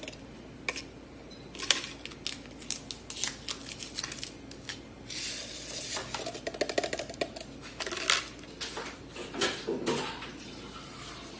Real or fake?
real